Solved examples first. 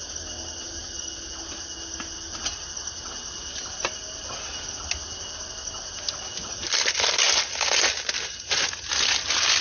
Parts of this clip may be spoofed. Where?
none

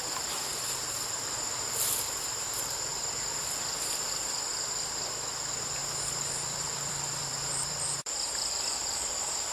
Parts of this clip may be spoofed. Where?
5.8-9.1 (vocoder, BigVGAN v2)

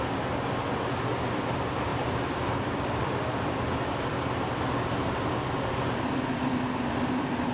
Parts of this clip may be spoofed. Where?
1.9-4.0 (vocoder, BigVGAN v2)

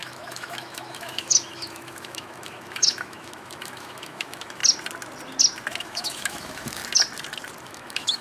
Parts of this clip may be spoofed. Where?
0.0-4.6 (autoencoder, DAC-VAE); 5.8-6.8; 7.6-8.2

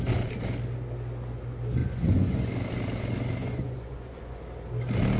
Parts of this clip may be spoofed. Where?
1.8-2.5 (vocoder, Vocos); 3.4-4.4

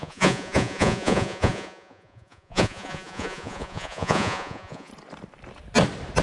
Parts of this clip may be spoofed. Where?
0.0-4.9 (vocoder, Vocos)

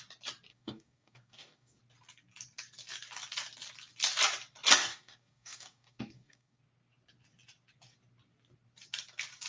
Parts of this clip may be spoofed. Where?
0.5-1.8 (codec, DAC); 4.8-6.6